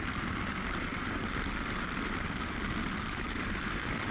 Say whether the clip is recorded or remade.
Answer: remade